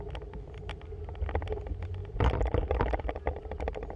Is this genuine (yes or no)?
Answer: yes